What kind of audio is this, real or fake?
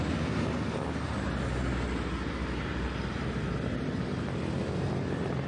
real